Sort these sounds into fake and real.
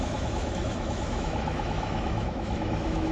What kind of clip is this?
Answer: fake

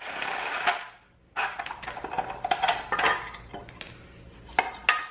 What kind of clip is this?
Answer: real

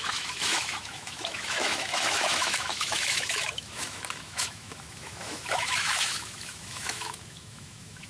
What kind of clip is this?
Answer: fake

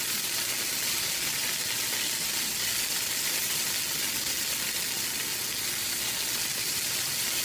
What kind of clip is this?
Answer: real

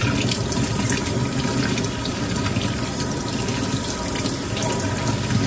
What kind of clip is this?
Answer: real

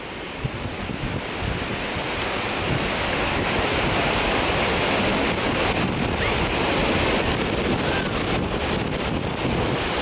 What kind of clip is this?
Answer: real